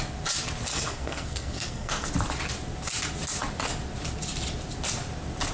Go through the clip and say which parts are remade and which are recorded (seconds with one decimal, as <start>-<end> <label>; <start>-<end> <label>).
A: 0.0-0.7 recorded; 0.7-2.1 remade; 2.1-5.5 recorded